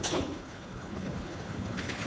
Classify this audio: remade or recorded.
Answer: remade